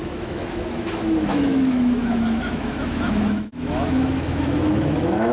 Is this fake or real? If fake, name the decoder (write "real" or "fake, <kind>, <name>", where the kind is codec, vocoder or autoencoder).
fake, autoencoder, DAC-VAE